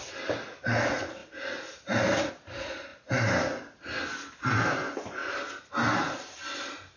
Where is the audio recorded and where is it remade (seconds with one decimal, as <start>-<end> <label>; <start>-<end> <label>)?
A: 0.0-7.0 recorded